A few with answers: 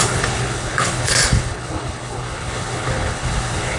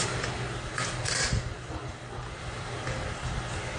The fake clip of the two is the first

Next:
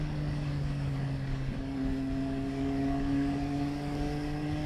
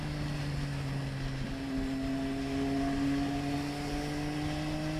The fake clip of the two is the first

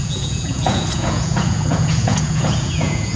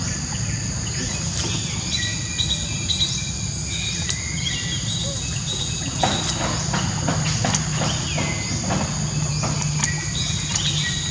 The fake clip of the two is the first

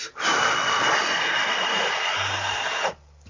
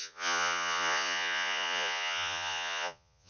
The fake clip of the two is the second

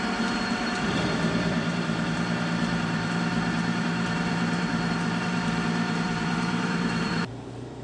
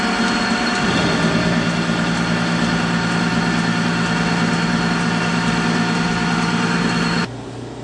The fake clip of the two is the first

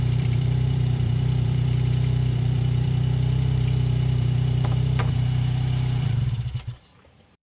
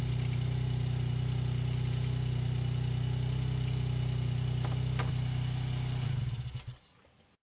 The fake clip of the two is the first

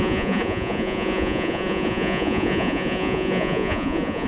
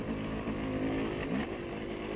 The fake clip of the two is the first